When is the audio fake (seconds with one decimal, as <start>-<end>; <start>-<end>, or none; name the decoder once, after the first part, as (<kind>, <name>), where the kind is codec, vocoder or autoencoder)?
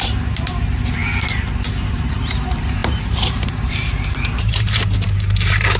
0.0-1.0 (vocoder, BigVGAN v2); 1.9-5.8